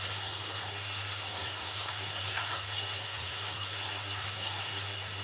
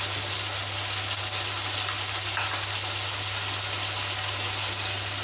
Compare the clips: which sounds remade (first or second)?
first